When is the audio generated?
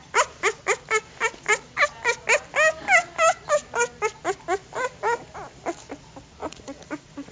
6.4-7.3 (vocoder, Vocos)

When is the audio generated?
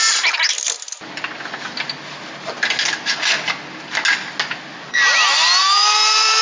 5.6-6.4 (vocoder, BigVGAN v2)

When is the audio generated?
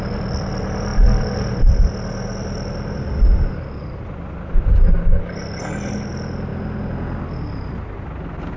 0.9-1.9 (vocoder, BigVGAN v2)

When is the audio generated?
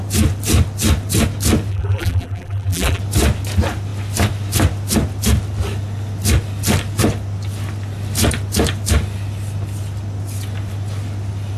1.7-3.0 (vocoder, BigVGAN v2)